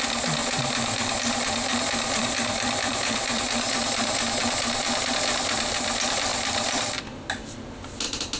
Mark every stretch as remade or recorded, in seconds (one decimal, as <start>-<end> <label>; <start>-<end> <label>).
0.0-0.4 recorded; 0.4-4.4 remade; 4.4-6.3 recorded; 6.3-7.0 remade; 7.0-8.4 recorded